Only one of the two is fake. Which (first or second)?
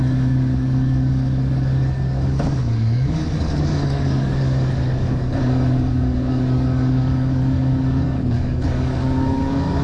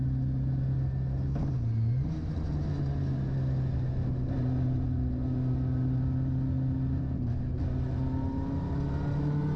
first